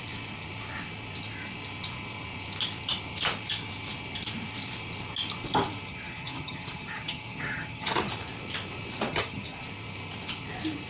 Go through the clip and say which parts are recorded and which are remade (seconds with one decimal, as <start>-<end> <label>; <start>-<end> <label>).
0.0-5.9 recorded; 5.9-8.1 remade; 8.1-9.1 recorded; 9.1-9.6 remade; 9.6-10.9 recorded